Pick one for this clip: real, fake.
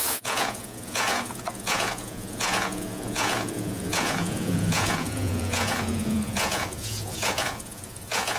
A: fake